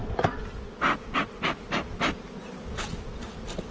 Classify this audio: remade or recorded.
recorded